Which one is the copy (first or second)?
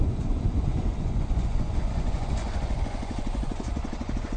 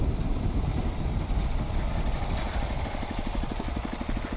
first